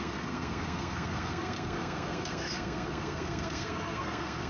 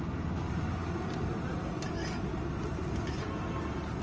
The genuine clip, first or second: second